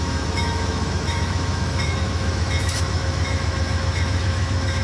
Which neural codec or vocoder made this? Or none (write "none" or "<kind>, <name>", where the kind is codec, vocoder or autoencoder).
autoencoder, DAC-VAE